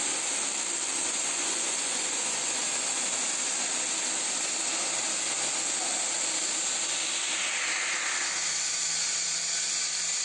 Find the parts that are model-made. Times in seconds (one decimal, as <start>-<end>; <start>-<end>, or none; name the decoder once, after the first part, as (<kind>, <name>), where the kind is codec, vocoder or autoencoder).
1.0-2.6 (vocoder, Vocos)